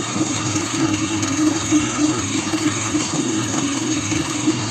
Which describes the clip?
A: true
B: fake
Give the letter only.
B